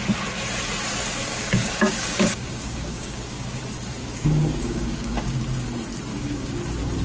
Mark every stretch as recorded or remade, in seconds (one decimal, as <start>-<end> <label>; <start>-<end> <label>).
0.0-1.2 recorded; 1.2-3.6 remade; 3.6-4.0 recorded; 4.0-5.4 remade; 5.4-6.1 recorded; 6.1-6.6 remade; 6.6-7.0 recorded